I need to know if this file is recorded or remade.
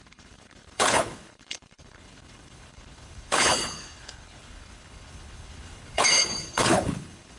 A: remade